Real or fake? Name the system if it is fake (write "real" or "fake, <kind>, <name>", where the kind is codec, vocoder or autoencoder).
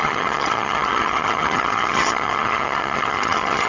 fake, vocoder, HiFi-GAN